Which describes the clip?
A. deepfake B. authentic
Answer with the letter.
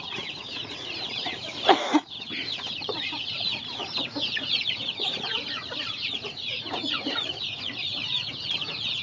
A